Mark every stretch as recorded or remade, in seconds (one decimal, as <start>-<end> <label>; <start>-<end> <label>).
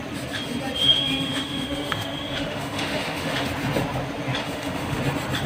0.0-0.8 recorded; 0.8-3.5 remade; 3.5-4.4 recorded; 4.4-5.0 remade; 5.0-5.5 recorded